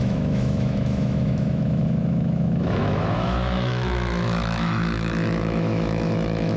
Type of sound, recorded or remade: remade